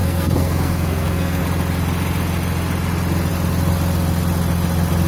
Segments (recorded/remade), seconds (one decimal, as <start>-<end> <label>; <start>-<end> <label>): 0.0-1.4 remade; 1.4-5.1 recorded